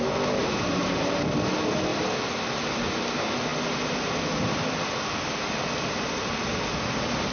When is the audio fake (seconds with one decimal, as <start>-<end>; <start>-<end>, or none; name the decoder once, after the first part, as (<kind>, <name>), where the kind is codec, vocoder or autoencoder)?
0.4-1.1 (vocoder, BigVGAN v2)